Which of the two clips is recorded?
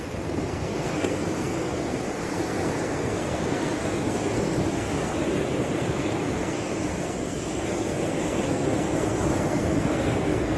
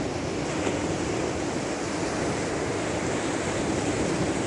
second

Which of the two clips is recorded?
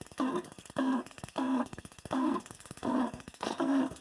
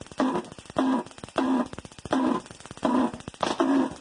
second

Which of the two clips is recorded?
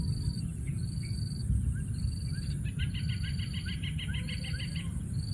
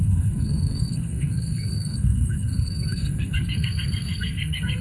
first